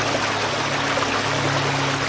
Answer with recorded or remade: recorded